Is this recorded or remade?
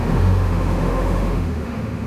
remade